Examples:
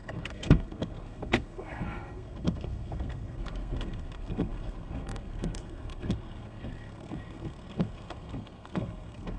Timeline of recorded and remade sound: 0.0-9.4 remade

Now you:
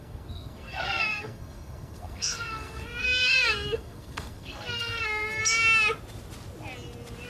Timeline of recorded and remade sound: 0.0-5.4 remade; 5.4-7.3 recorded

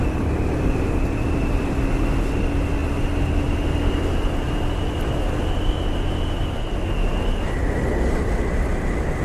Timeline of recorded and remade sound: 0.0-9.2 recorded